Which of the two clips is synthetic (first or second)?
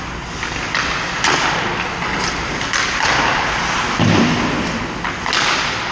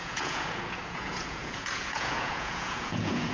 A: second